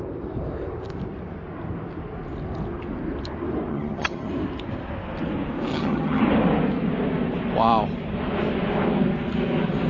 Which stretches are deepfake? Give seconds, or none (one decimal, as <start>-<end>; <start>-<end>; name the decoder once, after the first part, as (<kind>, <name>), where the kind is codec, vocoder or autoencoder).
3.7-4.3 (vocoder, HiFi-GAN); 5.7-6.2